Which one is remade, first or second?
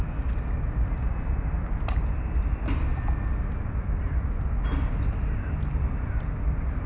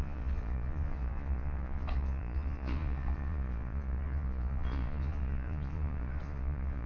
second